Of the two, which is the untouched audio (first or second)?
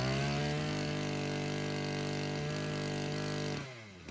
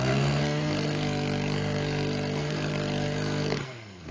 first